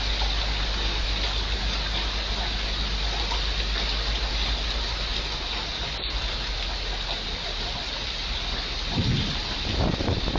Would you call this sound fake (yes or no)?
no